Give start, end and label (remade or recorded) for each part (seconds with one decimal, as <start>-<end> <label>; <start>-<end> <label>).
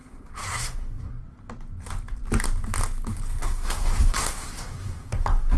0.0-1.2 remade; 1.2-3.3 recorded; 3.3-5.6 remade